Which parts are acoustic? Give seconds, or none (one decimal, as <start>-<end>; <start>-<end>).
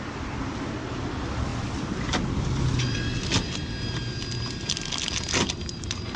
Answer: 0.0-6.2